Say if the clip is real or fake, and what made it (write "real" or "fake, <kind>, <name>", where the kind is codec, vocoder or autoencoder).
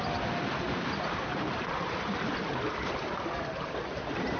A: fake, vocoder, BigVGAN v2